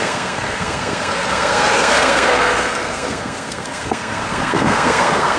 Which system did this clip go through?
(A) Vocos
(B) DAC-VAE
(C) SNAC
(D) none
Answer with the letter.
C